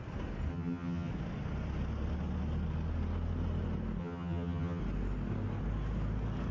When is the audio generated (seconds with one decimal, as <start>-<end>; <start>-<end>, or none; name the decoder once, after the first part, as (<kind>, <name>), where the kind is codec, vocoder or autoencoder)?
0.5-1.1 (vocoder, HiFi-GAN); 4.0-4.8